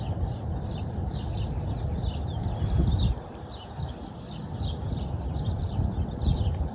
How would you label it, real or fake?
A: real